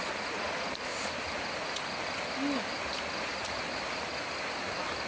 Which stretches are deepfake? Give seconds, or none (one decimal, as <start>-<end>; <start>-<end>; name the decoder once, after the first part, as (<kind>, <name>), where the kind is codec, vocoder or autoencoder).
none